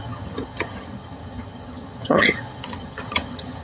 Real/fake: fake